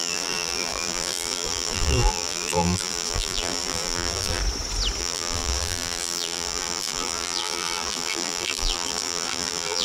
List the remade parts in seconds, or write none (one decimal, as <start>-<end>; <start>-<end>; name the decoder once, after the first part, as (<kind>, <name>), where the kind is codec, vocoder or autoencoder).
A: 0.0-4.4 (vocoder, BigVGAN v2); 5.0-9.8